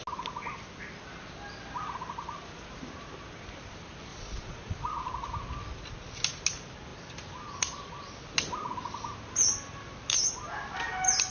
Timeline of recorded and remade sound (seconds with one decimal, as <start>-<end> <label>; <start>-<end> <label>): 0.0-4.1 recorded; 4.1-5.0 remade; 5.0-11.3 recorded